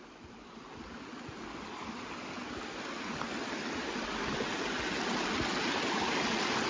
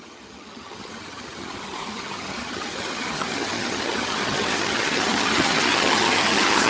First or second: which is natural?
first